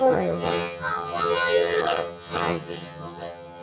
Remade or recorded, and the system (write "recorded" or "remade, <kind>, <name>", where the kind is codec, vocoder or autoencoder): remade, vocoder, HiFi-GAN